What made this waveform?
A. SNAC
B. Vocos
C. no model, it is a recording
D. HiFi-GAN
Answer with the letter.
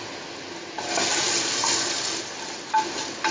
C